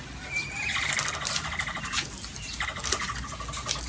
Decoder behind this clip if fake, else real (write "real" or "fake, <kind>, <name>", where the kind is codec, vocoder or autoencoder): real